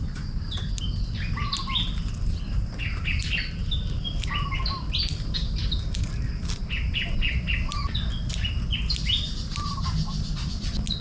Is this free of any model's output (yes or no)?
yes